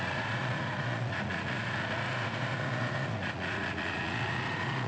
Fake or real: fake